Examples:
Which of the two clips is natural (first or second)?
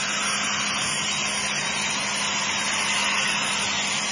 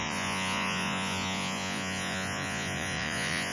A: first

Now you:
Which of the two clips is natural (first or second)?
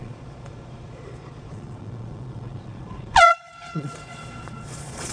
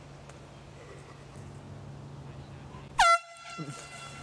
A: second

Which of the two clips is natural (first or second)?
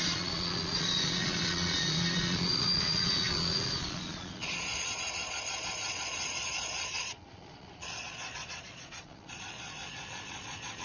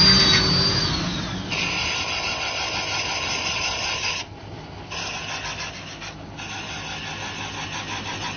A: second